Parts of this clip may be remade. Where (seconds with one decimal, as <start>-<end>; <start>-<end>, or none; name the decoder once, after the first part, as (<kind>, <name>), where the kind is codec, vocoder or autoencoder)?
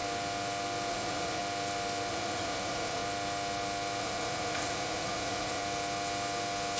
0.9-1.4 (vocoder, Vocos); 2.1-3.0; 4.0-5.6